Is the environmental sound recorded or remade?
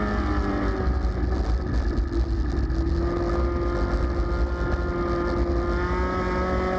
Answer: recorded